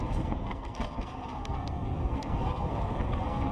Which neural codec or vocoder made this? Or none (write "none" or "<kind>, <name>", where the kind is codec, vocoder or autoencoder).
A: codec, SNAC